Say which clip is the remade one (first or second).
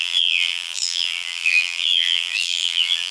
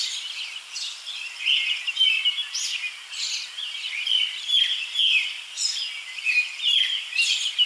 first